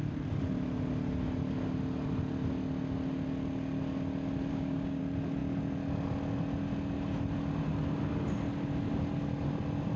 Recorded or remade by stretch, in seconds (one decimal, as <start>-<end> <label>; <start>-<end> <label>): 0.0-4.5 recorded; 4.5-5.0 remade; 5.0-10.0 recorded